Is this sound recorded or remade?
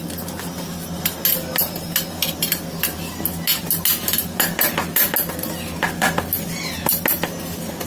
recorded